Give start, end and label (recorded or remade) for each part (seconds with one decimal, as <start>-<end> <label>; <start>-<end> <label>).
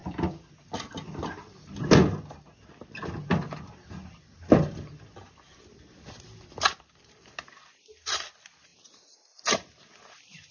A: 0.0-10.5 recorded